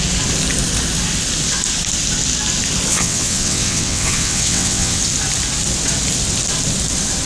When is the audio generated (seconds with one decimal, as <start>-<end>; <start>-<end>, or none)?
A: 2.9-5.0

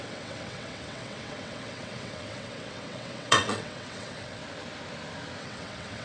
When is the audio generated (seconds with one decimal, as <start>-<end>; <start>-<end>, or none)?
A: 0.0-4.4; 5.4-6.0